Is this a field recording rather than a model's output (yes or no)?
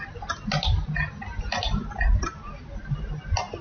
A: yes